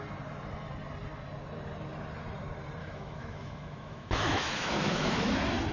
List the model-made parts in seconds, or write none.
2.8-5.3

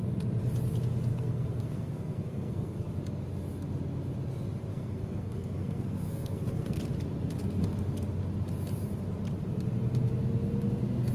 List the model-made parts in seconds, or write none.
1.1-2.9; 4.7-6.8